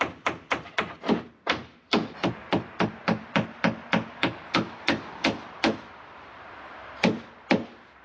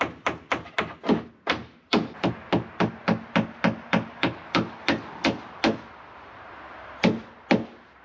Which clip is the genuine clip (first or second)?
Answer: second